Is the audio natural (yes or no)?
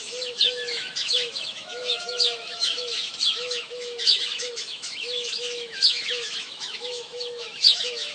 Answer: no